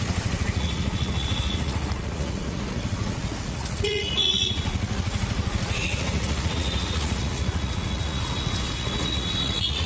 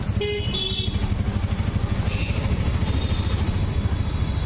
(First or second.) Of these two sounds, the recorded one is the second